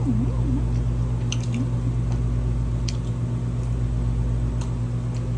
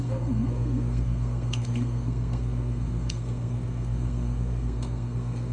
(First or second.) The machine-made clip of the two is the second